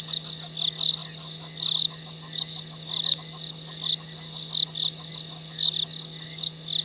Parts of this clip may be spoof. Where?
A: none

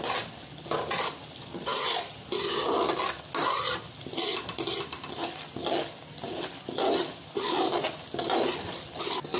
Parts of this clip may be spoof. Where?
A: none